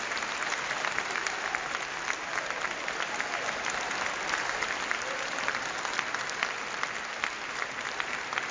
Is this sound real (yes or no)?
yes